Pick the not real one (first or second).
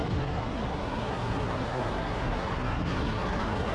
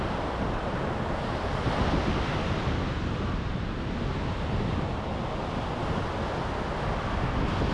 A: first